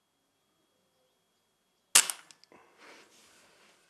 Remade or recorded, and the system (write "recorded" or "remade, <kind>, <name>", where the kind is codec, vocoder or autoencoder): recorded